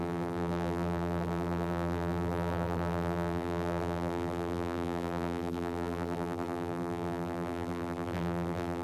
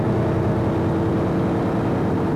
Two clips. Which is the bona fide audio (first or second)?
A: second